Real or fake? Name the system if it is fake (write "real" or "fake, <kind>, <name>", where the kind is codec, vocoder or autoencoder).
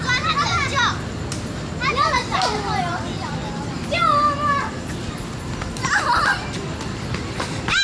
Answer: real